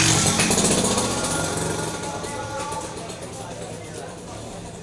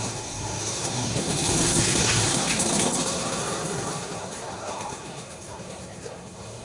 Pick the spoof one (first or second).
second